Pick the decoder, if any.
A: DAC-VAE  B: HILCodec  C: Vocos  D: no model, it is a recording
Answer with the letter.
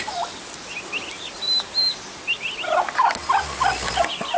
D